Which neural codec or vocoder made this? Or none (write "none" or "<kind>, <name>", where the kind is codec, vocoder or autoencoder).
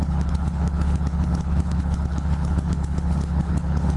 codec, HILCodec